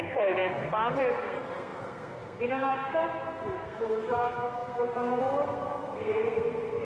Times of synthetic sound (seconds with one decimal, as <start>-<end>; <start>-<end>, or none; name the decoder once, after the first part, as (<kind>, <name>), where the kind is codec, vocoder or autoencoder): 0.0-6.8 (codec, SNAC)